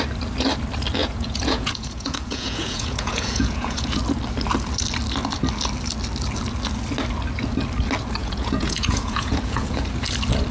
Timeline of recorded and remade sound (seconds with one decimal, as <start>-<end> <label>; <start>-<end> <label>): 0.0-1.0 recorded; 1.0-4.0 remade; 4.0-8.2 recorded; 8.2-9.8 remade; 9.8-10.5 recorded